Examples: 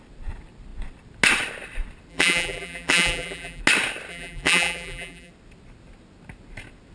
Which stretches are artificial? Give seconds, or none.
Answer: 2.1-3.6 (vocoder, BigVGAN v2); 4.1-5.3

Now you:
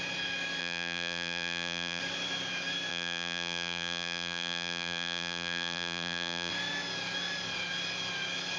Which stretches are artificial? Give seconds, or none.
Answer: 0.6-2.0 (vocoder, BigVGAN v2); 2.9-6.5

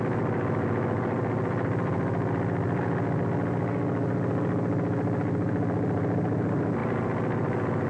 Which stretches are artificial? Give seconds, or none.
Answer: none

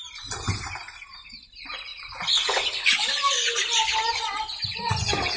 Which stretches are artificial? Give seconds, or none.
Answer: none

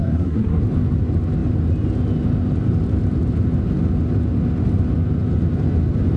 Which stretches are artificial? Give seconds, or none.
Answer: 0.0-0.6 (codec, SNAC)

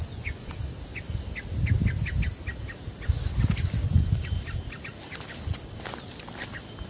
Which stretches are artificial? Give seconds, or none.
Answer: 0.0-0.5 (vocoder, Vocos)

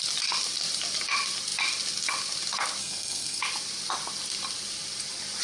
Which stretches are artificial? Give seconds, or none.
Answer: 2.8-3.4 (codec, SNAC)